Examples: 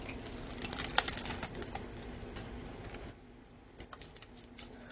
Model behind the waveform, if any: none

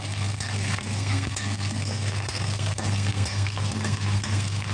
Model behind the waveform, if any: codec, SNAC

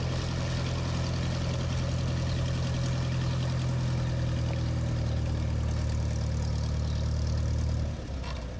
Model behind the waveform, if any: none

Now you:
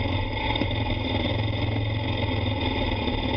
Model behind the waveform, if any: none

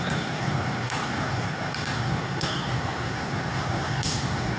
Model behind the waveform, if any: codec, SNAC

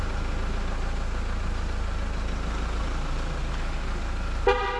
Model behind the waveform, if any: none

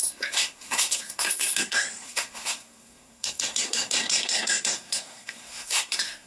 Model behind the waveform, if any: codec, SNAC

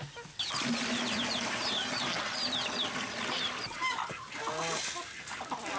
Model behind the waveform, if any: none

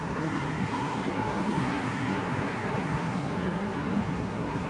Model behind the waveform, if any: codec, SNAC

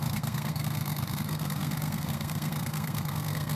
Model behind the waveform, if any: codec, SNAC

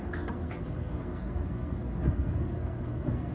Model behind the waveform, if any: codec, SNAC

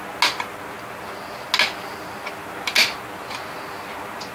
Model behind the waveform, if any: none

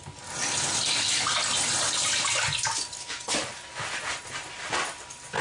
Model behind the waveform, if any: none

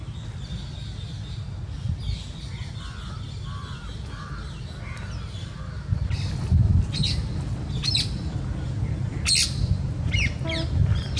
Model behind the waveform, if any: none